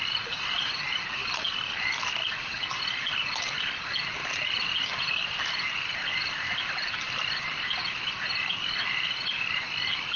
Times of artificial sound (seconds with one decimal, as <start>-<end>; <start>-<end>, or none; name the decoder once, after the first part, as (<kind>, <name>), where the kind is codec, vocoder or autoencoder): none